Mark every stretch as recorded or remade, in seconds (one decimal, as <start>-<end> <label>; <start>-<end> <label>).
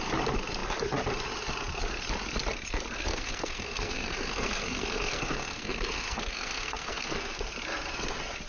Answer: 0.0-3.1 recorded; 3.1-7.4 remade; 7.4-8.5 recorded